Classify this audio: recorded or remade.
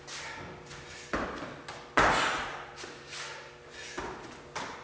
recorded